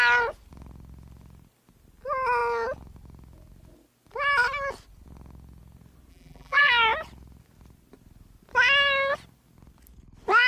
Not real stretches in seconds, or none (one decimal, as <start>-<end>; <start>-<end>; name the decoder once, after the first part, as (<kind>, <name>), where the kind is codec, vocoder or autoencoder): 6.1-6.7 (vocoder, BigVGAN v2)